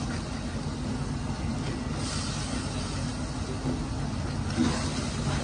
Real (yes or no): yes